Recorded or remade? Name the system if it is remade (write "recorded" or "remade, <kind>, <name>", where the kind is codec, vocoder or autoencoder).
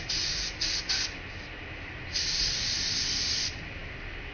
recorded